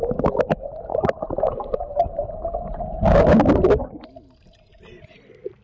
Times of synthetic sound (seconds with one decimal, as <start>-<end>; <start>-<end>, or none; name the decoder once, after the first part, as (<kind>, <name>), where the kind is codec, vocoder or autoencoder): 0.9-2.8 (vocoder, BigVGAN v2)